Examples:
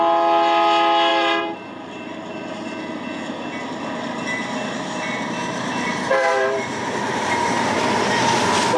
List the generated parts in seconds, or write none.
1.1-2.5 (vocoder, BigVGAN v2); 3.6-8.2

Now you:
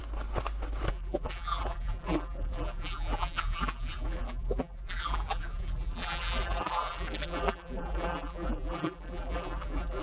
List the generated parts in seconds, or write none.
0.9-10.0 (vocoder, BigVGAN v2)

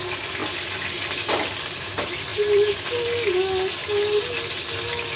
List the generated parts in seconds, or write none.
2.3-2.8 (vocoder, BigVGAN v2)

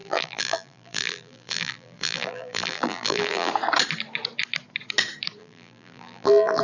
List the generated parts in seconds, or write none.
0.0-3.5 (vocoder, BigVGAN v2); 5.4-6.6

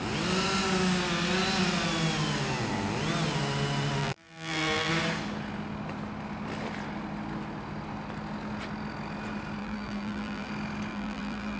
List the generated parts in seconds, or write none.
4.0-4.9 (vocoder, BigVGAN v2); 9.6-10.5; 10.9-11.6

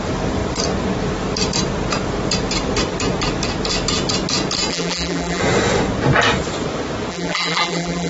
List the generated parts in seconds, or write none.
4.7-5.4 (vocoder, BigVGAN v2); 7.1-8.1

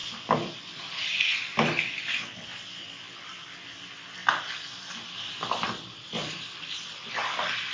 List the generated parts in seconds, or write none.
none

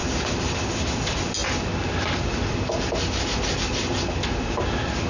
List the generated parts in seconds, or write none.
none